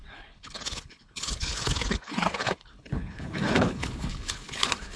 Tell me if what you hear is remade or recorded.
remade